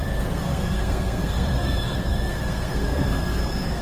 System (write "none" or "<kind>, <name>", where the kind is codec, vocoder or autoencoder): codec, SNAC